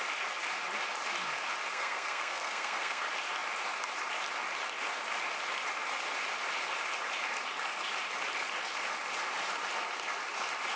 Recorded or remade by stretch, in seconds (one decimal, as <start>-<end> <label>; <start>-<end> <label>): 0.0-1.7 recorded; 1.7-3.0 remade; 3.0-10.8 recorded